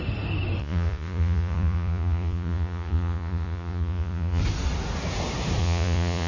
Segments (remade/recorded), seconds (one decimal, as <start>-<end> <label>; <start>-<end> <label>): 0.0-0.6 recorded; 0.6-4.4 remade; 4.4-5.6 recorded; 5.6-6.3 remade